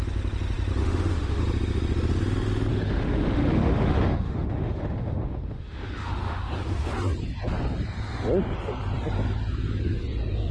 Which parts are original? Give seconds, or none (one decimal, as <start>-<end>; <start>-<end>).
0.0-0.8; 1.4-2.7; 6.5-10.5